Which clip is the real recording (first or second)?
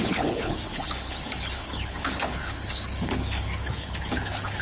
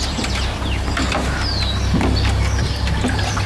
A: second